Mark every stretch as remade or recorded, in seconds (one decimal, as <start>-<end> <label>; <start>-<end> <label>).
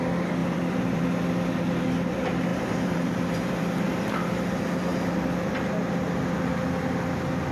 0.0-0.4 recorded; 0.4-1.0 remade; 1.0-2.5 recorded; 2.5-3.6 remade; 3.6-7.5 recorded